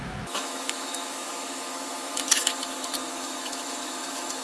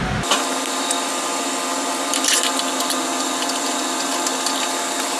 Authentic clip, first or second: second